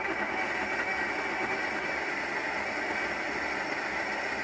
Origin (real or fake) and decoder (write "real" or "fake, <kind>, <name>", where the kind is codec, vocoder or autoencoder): real